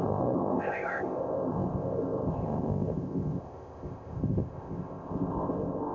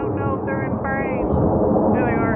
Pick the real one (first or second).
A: second